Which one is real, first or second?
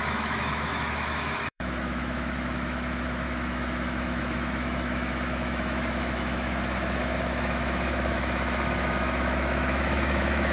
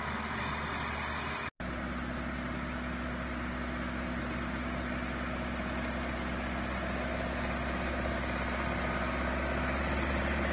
second